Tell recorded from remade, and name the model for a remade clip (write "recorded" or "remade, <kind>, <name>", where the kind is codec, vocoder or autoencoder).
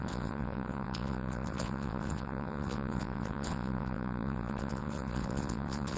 remade, vocoder, WaveNeXt